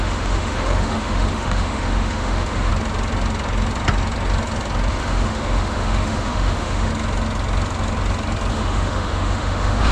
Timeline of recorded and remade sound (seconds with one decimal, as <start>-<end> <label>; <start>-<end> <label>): 0.0-2.7 remade; 2.7-4.9 recorded; 4.9-6.9 remade; 6.9-8.5 recorded; 8.5-9.9 remade